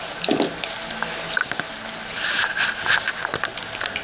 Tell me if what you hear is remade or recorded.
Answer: recorded